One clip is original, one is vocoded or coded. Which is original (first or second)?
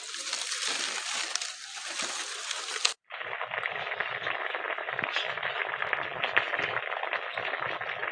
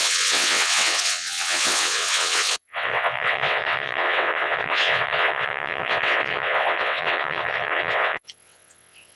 first